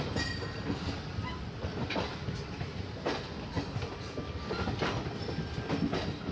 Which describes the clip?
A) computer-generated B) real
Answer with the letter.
B